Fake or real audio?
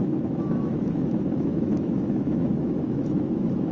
fake